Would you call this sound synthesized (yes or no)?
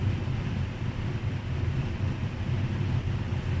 yes